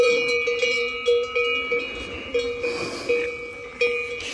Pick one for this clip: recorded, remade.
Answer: recorded